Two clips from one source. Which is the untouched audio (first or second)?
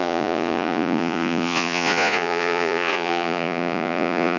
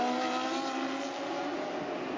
second